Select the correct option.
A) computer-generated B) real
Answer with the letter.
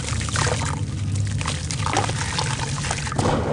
B